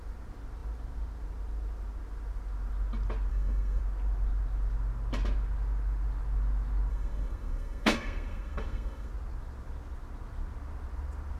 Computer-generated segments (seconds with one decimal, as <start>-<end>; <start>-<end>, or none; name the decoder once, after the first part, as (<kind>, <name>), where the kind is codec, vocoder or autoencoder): 3.3-3.8 (codec, SNAC); 6.9-9.1